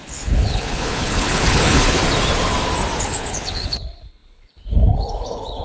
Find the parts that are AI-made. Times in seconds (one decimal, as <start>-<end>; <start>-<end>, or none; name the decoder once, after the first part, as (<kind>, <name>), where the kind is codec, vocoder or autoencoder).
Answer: 0.0-2.0 (codec, HILCodec); 3.0-5.6